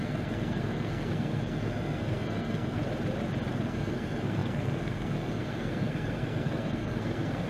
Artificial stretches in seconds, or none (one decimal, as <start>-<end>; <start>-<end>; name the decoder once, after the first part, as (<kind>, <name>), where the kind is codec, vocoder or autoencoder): 0.0-2.8 (codec, SNAC); 3.5-7.5